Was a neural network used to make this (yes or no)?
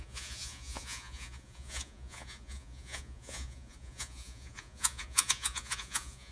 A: yes